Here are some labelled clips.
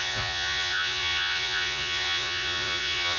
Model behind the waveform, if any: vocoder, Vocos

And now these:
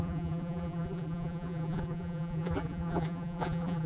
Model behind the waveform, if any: vocoder, BigVGAN v2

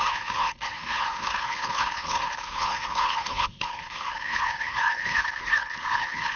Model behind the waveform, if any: codec, HILCodec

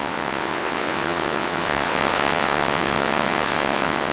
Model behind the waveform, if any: vocoder, WaveNeXt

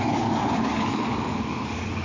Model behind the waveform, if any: codec, DAC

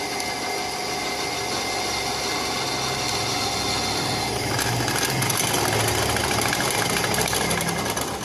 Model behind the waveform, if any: none